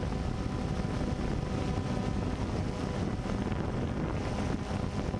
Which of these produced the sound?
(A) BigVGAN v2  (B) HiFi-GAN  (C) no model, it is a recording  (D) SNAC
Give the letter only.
C